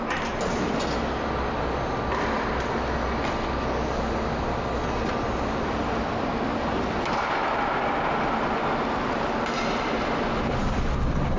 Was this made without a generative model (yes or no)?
yes